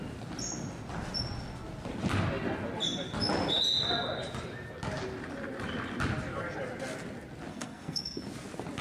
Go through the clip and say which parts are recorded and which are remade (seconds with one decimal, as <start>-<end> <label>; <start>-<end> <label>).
0.0-7.5 recorded; 7.5-8.2 remade; 8.2-8.8 recorded